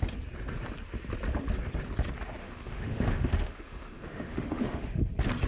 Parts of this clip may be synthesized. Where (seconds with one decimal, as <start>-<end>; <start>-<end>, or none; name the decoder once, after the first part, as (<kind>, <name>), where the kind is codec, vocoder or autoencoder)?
2.4-5.1 (autoencoder, DAC-VAE)

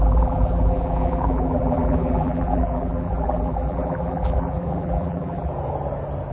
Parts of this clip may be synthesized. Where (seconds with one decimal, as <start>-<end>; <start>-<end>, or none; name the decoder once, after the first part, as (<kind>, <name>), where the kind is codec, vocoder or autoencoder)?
0.0-5.5 (vocoder, BigVGAN v2)

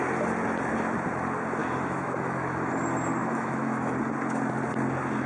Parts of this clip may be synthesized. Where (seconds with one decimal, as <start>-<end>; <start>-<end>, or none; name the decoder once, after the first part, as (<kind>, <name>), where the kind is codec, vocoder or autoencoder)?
1.6-2.7 (autoencoder, DAC-VAE); 3.2-4.0

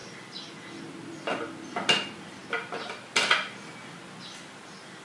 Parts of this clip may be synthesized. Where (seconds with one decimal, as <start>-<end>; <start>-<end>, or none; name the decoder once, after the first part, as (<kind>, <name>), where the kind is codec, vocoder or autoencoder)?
none

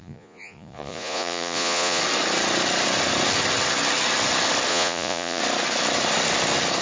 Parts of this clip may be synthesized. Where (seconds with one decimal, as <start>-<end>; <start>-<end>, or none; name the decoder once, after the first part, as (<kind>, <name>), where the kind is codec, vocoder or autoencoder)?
0.0-2.0 (vocoder, Vocos); 4.7-5.4

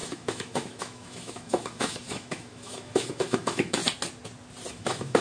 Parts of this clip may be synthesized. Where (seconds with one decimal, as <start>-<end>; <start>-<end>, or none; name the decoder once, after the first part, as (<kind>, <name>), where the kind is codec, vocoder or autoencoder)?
0.0-3.8 (autoencoder, DAC-VAE); 4.7-5.2

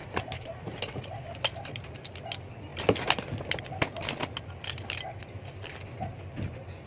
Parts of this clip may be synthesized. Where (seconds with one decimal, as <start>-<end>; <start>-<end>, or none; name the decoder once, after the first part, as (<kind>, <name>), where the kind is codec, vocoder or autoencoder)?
0.0-0.8 (vocoder, BigVGAN v2)

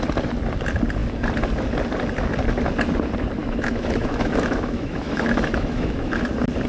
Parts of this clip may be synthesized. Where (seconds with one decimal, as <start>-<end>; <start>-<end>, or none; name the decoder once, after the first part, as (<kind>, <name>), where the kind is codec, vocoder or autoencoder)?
3.4-6.2 (autoencoder, DAC-VAE)